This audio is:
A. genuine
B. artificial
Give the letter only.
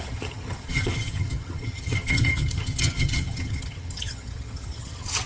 B